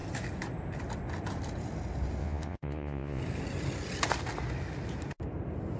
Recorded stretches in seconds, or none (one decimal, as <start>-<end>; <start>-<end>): 0.0-2.2; 3.2-5.8